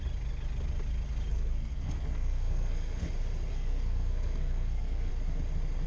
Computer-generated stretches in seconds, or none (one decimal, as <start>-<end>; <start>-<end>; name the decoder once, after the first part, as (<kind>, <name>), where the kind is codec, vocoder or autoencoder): 1.3-3.1 (codec, SNAC); 3.5-5.1